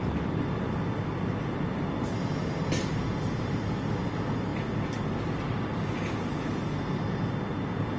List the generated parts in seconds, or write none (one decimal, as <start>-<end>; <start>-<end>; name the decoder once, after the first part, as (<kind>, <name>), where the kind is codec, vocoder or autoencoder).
none